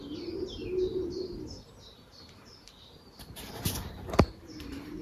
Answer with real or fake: fake